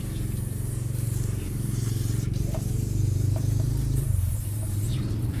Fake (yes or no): yes